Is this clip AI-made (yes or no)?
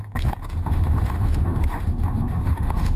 yes